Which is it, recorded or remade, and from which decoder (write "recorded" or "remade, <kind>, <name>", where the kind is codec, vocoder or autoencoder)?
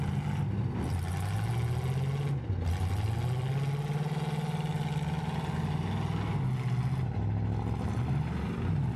recorded